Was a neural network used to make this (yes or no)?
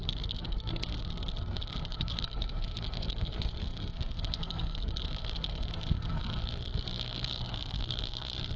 yes